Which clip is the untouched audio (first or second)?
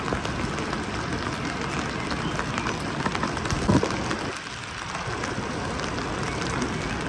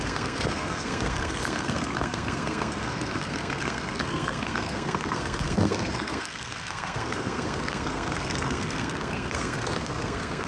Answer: first